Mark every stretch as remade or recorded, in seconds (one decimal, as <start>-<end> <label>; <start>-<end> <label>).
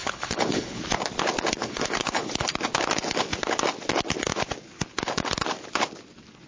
0.0-0.8 remade; 0.8-1.6 recorded; 1.6-2.3 remade; 2.3-6.5 recorded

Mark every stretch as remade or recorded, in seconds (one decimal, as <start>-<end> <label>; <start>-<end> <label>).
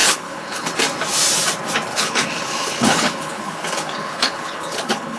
0.0-0.8 remade; 0.8-1.9 recorded; 1.9-5.2 remade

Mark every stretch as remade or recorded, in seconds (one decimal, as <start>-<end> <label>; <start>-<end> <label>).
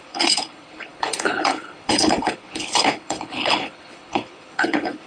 0.0-5.1 remade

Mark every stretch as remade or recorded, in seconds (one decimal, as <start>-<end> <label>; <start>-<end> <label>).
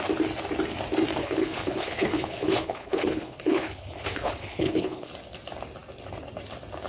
0.0-1.2 recorded; 1.2-5.1 remade; 5.1-6.9 recorded